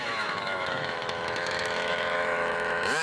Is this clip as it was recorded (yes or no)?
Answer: no